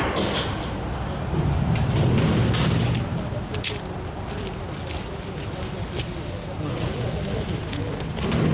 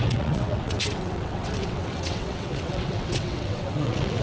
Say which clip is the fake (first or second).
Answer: second